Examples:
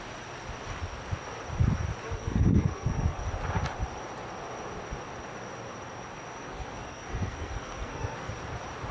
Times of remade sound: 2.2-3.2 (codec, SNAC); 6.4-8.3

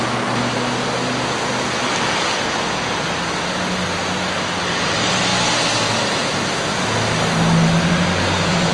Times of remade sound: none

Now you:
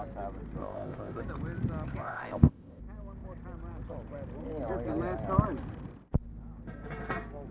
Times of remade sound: 0.6-1.2 (codec, ZipCodec); 2.0-2.8

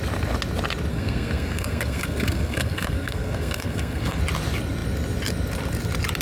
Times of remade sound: 0.9-4.2 (codec, SNAC)